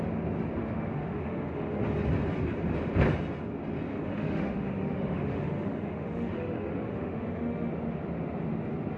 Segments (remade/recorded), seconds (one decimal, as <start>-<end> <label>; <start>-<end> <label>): 0.0-0.6 recorded; 0.6-1.8 remade; 1.8-3.9 recorded; 3.9-7.7 remade; 7.7-9.0 recorded